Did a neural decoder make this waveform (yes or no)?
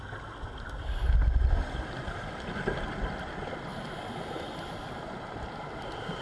no